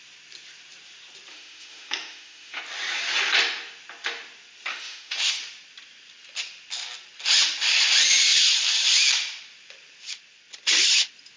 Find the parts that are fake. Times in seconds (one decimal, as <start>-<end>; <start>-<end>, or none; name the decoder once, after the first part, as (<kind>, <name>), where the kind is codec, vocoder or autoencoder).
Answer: 1.3-2.6 (autoencoder, DAC-VAE); 4.7-5.4